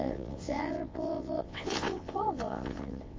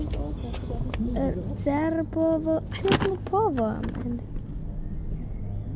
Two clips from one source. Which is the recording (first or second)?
second